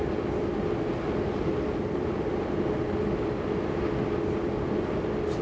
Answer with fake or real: real